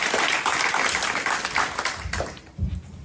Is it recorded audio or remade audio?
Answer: recorded